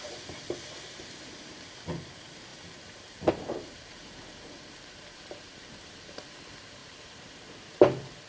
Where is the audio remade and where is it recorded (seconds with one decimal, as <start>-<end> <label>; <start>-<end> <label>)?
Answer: 0.0-8.3 remade